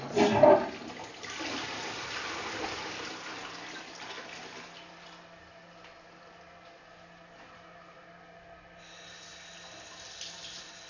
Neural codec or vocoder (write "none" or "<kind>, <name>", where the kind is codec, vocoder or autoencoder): none